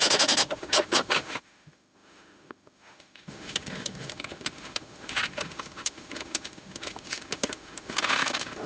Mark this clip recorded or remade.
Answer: remade